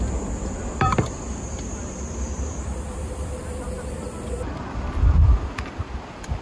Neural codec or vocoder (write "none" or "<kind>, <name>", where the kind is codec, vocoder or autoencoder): vocoder, BigVGAN v2